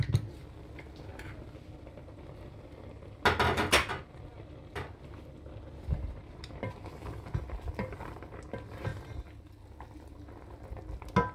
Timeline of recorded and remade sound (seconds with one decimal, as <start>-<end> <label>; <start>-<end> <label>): 0.0-11.3 recorded

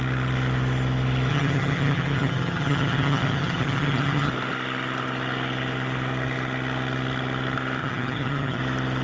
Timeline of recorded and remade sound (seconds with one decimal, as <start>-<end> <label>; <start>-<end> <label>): 0.0-1.3 recorded; 1.3-4.3 remade; 4.3-7.8 recorded; 7.8-8.6 remade; 8.6-9.0 recorded